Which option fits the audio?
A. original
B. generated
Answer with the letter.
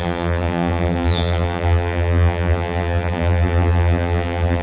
B